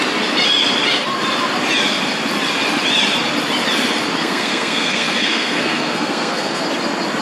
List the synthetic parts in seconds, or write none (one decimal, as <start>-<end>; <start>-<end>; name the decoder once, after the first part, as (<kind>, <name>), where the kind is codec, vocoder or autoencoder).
4.2-6.6 (codec, SNAC)